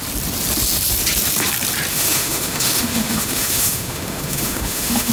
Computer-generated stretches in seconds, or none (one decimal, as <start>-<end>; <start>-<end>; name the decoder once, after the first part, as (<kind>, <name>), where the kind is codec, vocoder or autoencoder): 1.9-5.1 (autoencoder, DAC-VAE)